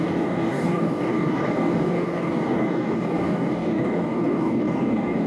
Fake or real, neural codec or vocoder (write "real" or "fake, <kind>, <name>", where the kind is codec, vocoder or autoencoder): fake, codec, DAC